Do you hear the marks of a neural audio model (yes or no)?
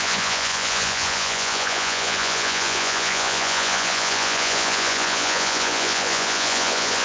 yes